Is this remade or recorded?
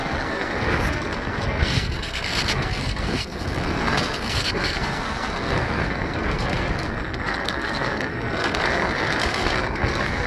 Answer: remade